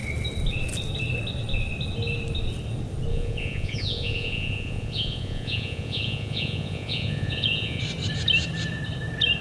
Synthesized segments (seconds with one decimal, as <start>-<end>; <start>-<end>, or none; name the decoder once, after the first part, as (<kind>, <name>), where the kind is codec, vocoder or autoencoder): 3.1-7.8 (vocoder, Vocos)